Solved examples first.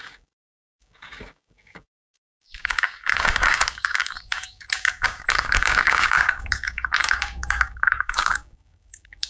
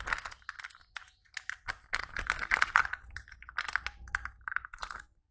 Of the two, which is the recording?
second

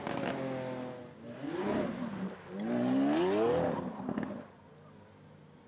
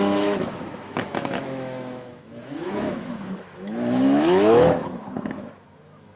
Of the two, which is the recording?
first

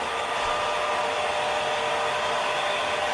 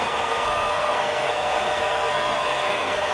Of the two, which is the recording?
first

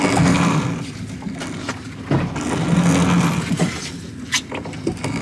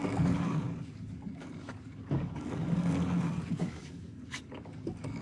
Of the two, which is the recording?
first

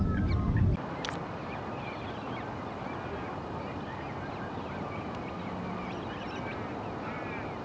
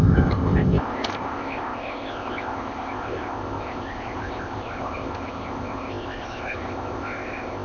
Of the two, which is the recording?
first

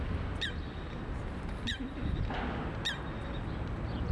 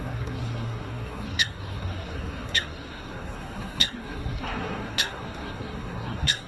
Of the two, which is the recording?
first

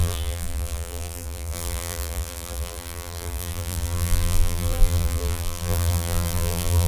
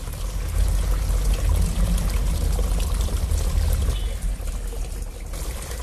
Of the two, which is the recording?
second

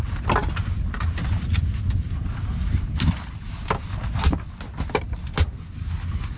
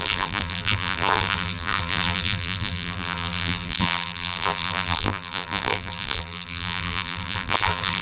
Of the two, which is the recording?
first